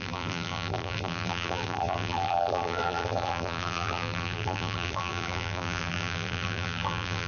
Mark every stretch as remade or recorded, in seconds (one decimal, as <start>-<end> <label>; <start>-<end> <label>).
0.0-7.3 remade